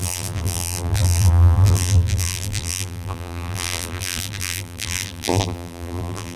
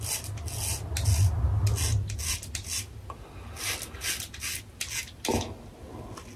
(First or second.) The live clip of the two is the second